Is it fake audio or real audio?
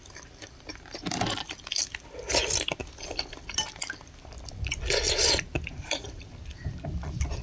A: real